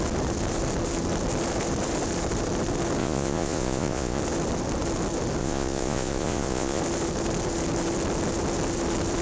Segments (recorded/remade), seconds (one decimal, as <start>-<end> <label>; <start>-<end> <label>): 0.0-3.0 recorded; 3.0-4.2 remade; 4.2-5.4 recorded; 5.4-6.8 remade; 6.8-9.2 recorded

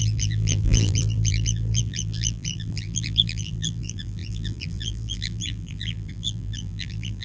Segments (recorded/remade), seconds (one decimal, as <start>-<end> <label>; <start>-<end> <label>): 0.0-7.2 remade

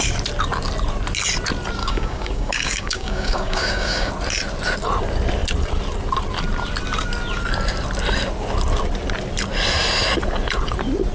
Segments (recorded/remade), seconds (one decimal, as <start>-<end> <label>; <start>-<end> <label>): 0.0-1.8 recorded; 1.8-4.1 remade; 4.1-11.1 recorded

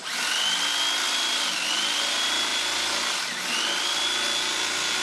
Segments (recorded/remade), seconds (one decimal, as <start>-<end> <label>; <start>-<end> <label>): 0.0-5.0 recorded

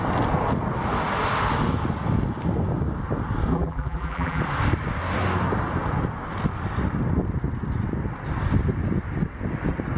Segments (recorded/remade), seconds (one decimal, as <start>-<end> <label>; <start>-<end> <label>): 0.0-3.5 recorded; 3.5-4.4 remade; 4.4-10.0 recorded